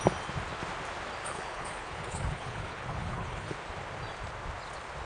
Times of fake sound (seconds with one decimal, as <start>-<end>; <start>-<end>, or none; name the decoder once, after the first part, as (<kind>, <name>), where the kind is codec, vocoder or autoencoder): 1.2-3.5 (codec, HILCodec)